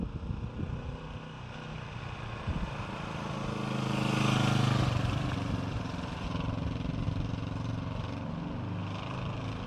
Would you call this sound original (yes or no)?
yes